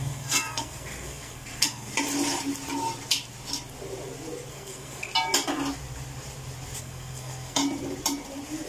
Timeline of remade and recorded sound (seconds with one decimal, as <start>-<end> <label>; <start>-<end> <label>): 0.0-1.9 remade; 1.9-4.5 recorded; 4.5-5.1 remade; 5.1-6.8 recorded; 6.8-7.6 remade; 7.6-8.7 recorded